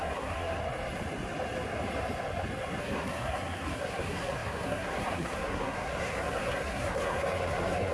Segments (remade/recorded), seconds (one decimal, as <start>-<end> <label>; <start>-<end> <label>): 0.0-0.6 remade; 0.6-2.8 recorded; 2.8-7.9 remade